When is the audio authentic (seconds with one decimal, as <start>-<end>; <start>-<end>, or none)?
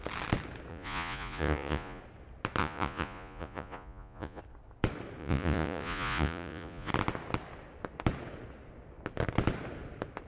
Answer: 0.0-0.7; 2.0-2.6; 4.4-5.2; 6.9-10.3